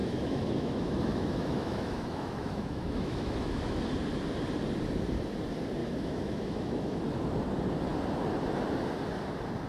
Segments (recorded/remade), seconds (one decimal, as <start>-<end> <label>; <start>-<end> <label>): 0.0-3.8 remade; 3.8-5.8 recorded; 5.8-7.0 remade; 7.0-9.7 recorded